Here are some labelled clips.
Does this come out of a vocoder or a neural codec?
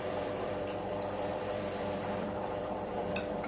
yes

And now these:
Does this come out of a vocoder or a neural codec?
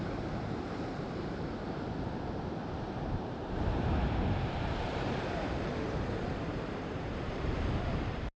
yes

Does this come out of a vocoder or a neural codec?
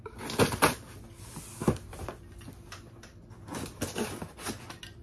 no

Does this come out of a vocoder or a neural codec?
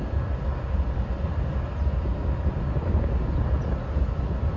no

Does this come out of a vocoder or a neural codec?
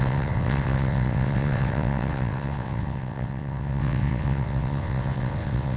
yes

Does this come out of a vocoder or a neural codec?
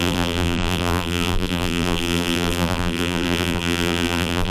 yes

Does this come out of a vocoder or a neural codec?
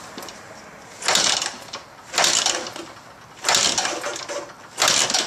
no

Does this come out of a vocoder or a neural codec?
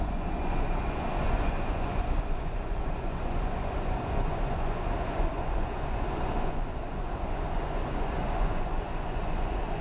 yes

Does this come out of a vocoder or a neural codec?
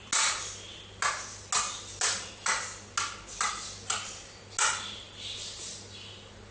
no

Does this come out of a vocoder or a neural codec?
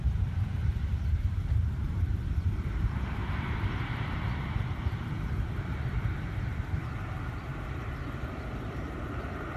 yes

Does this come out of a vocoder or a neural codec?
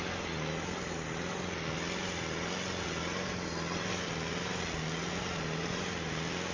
no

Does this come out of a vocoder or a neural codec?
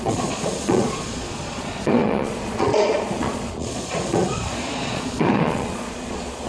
yes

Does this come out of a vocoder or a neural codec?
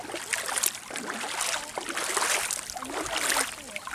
no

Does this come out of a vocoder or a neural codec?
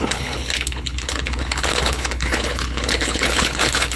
yes